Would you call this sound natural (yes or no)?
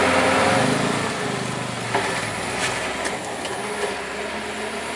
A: yes